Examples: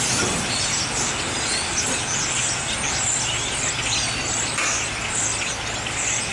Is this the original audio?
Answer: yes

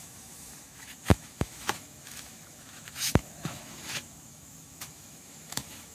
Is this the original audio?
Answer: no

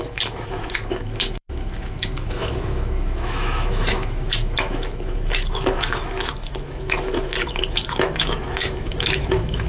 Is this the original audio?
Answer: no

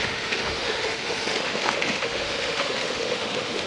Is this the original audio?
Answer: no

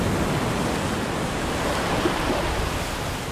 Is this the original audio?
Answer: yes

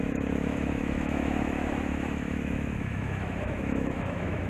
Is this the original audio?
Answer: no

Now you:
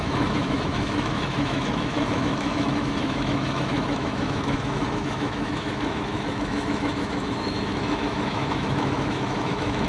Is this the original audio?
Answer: no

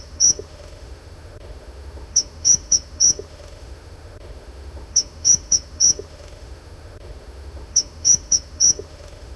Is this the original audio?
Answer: no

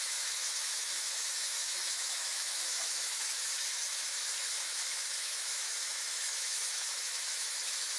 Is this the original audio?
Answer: no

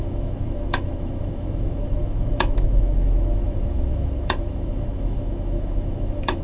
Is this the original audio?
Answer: no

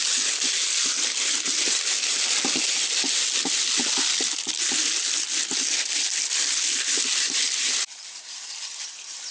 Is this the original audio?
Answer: yes